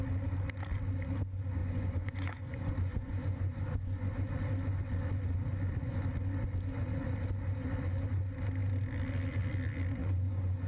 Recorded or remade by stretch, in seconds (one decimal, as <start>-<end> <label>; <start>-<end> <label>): 0.0-1.6 recorded; 1.6-4.3 remade; 4.3-10.0 recorded; 10.0-10.7 remade